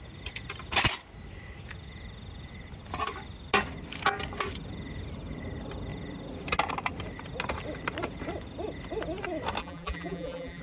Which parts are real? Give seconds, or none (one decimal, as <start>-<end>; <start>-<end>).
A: 0.0-9.6